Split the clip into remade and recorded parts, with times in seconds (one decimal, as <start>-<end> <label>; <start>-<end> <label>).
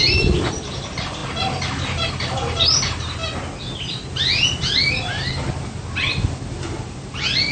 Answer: 0.0-1.2 remade; 1.2-2.1 recorded; 2.1-3.2 remade; 3.2-4.9 recorded; 4.9-7.5 remade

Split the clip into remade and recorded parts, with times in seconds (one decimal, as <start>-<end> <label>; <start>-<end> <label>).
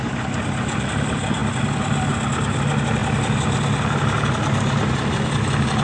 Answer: 0.0-5.8 recorded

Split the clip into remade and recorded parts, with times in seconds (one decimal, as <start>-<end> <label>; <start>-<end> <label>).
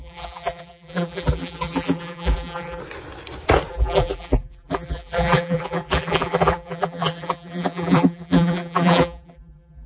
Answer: 0.0-2.8 remade; 2.8-3.7 recorded; 3.7-9.9 remade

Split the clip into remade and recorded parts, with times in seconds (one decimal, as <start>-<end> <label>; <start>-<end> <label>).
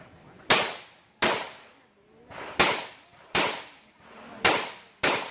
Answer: 0.0-3.1 recorded; 3.1-4.2 remade; 4.2-5.3 recorded